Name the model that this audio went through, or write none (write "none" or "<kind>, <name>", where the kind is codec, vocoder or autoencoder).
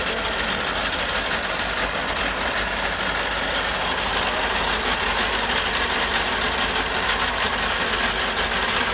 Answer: none